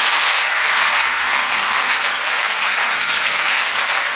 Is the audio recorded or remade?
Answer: remade